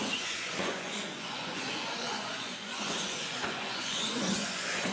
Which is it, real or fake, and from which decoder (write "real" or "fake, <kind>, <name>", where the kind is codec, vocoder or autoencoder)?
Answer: fake, vocoder, Vocos